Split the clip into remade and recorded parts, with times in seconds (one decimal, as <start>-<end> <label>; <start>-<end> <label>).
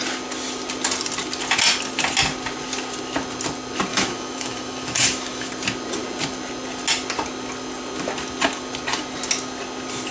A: 0.0-3.9 recorded; 3.9-5.5 remade; 5.5-10.1 recorded